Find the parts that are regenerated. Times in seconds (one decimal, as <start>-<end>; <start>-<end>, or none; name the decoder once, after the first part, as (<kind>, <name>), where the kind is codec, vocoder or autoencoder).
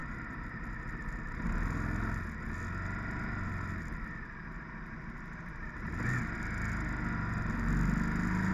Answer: none